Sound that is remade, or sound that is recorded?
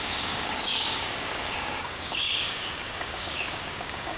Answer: remade